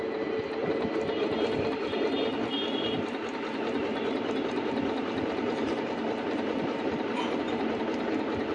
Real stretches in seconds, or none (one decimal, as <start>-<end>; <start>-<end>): 0.0-0.6; 1.2-3.9; 7.8-8.5